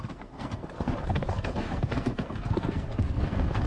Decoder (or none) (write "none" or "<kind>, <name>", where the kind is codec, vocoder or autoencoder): codec, SNAC